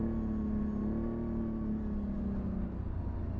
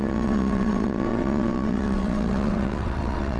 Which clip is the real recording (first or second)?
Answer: first